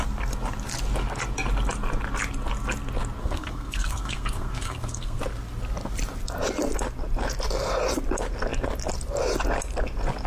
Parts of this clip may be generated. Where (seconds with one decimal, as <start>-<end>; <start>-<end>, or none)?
3.2-5.2